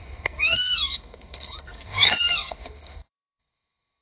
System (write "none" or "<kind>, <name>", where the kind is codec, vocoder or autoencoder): codec, SNAC